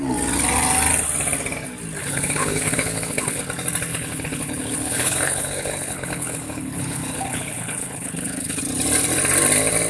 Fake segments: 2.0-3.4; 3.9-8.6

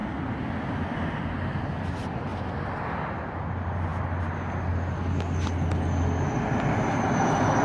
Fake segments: none

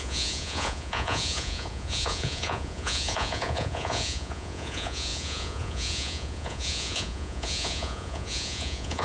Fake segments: 0.0-9.0